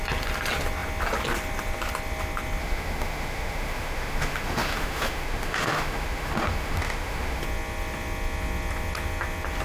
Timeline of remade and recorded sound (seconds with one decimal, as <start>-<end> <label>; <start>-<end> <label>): 0.0-2.6 recorded; 2.6-7.4 remade; 7.4-9.6 recorded

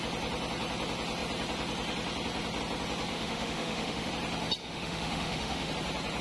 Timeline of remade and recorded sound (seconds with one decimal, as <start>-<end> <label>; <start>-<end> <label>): 0.0-3.1 recorded; 3.1-4.1 remade; 4.1-4.6 recorded; 4.6-5.7 remade; 5.7-6.2 recorded